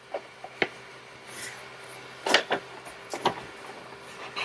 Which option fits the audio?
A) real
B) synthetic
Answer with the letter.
A